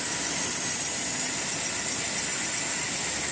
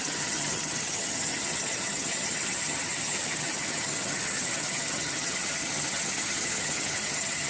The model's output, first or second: second